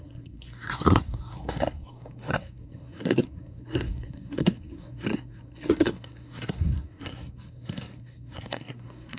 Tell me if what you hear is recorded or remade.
remade